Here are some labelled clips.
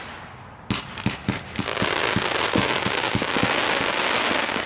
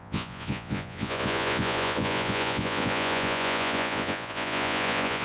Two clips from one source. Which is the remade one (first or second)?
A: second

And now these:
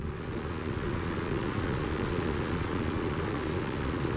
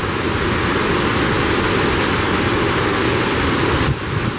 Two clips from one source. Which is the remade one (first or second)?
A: first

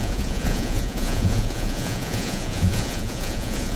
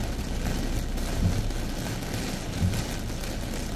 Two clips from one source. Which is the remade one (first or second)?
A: first